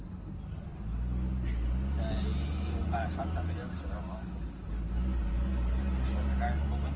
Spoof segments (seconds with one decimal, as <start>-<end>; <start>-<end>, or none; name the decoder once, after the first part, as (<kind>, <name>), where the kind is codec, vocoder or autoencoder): none